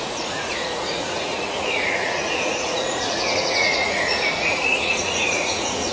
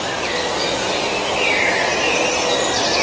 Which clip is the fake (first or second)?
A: first